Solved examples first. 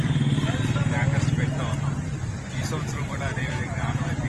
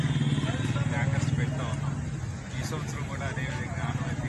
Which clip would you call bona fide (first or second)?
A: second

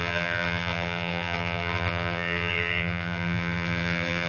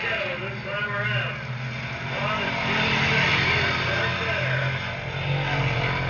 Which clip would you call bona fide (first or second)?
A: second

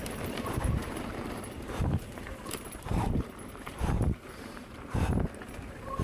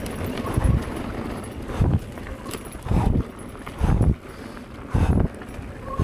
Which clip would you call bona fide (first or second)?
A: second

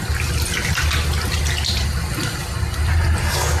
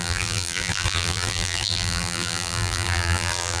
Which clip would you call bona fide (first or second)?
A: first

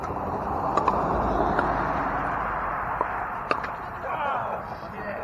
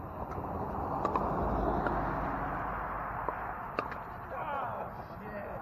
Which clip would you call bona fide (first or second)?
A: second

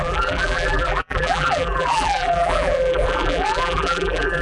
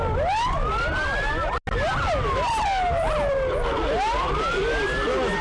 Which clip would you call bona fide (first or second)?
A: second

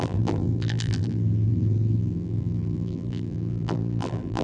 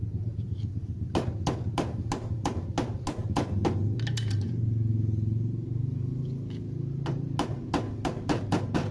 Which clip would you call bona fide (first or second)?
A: second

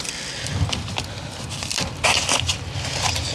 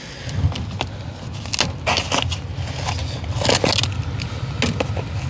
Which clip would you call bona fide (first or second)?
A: second